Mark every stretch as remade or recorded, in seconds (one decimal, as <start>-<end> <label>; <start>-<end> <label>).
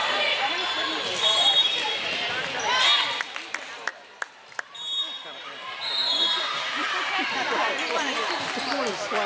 0.0-2.6 remade; 2.6-6.0 recorded; 6.0-8.9 remade; 8.9-9.3 recorded